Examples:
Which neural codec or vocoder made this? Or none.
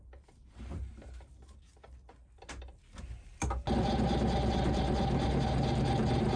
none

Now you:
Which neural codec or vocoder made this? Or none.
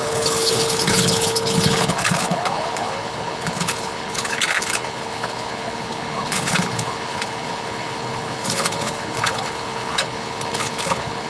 codec, HILCodec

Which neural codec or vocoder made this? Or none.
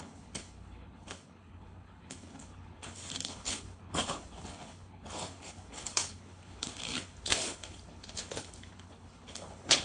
codec, HILCodec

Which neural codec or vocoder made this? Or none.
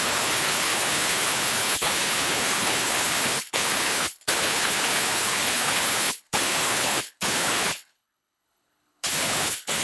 codec, HILCodec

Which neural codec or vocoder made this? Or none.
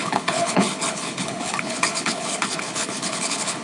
codec, HILCodec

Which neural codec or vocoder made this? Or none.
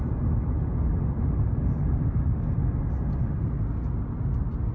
none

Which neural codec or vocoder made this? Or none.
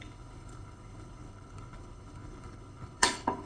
codec, HILCodec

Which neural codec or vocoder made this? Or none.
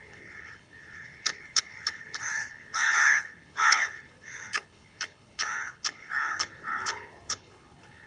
codec, HILCodec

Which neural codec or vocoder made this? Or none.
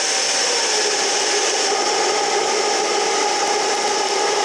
none